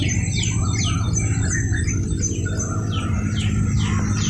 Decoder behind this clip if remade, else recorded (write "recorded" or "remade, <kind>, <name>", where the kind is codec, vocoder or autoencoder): recorded